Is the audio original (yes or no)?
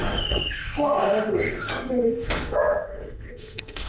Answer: no